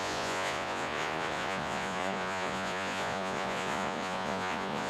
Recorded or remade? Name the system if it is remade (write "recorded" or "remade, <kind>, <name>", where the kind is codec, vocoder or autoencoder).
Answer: remade, vocoder, Vocos